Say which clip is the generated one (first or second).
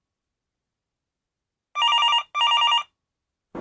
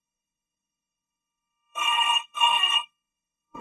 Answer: second